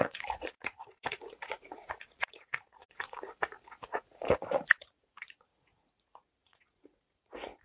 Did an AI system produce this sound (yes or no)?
yes